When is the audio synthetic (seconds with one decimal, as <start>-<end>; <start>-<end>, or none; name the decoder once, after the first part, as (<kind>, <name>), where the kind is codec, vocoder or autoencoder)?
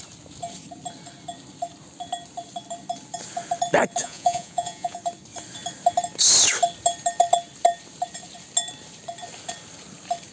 4.0-5.0 (vocoder, Vocos)